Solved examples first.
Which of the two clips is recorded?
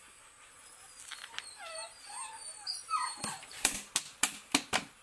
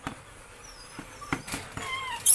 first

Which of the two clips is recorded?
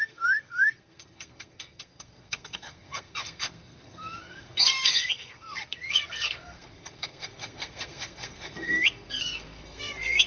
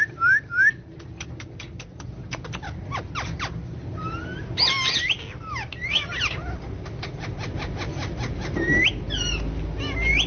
second